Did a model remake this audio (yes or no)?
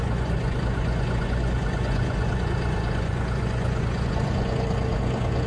yes